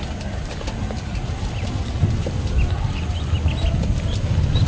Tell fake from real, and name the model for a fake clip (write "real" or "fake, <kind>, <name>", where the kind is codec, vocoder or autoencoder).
real